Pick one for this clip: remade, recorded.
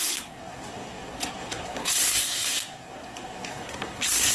remade